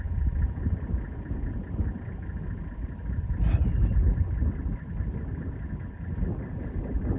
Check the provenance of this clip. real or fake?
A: real